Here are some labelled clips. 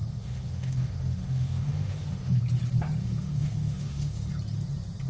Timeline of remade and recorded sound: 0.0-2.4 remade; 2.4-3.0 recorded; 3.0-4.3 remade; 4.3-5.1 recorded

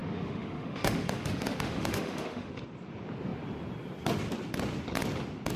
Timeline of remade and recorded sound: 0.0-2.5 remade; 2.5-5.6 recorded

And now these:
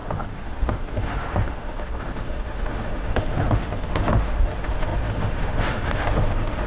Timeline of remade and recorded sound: 0.0-6.7 remade

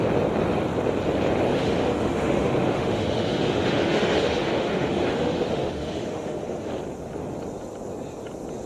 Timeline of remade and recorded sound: 0.0-1.5 recorded; 1.5-6.7 remade; 6.7-8.7 recorded

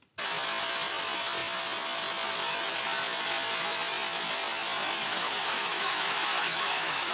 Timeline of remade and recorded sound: 0.0-5.0 recorded; 5.0-7.1 remade